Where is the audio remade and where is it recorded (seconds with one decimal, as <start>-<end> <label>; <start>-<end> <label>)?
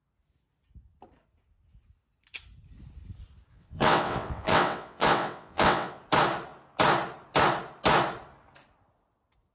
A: 0.0-3.5 recorded; 3.5-6.0 remade; 6.0-9.5 recorded